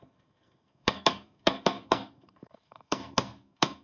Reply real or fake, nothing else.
fake